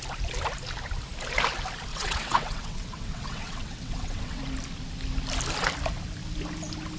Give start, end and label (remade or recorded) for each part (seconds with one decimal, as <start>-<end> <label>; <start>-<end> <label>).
0.0-1.9 recorded; 1.9-4.4 remade; 4.4-7.0 recorded